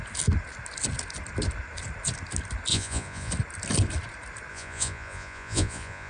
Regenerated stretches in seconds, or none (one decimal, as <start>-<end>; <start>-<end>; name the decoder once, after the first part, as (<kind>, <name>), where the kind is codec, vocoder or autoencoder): 2.7-3.3 (vocoder, Vocos); 4.5-6.1